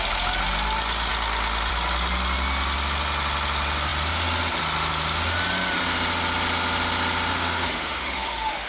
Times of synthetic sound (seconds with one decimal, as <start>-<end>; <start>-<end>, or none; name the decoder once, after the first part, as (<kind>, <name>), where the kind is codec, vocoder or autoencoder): 7.3-8.7 (autoencoder, DAC-VAE)